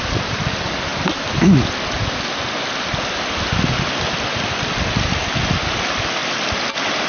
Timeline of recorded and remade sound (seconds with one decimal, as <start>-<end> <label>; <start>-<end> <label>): 0.0-7.1 recorded